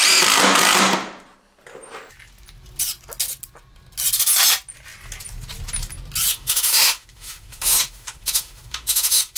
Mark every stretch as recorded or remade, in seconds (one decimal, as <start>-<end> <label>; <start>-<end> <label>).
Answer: 0.0-6.3 recorded; 6.3-9.4 remade